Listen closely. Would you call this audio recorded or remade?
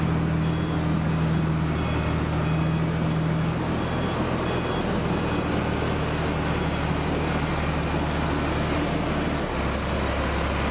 recorded